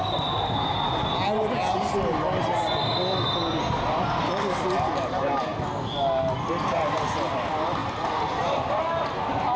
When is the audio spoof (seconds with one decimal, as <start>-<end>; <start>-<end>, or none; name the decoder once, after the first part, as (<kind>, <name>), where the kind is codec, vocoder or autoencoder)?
none